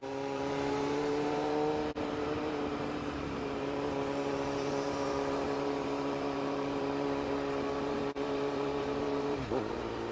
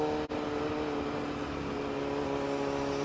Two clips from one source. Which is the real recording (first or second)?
second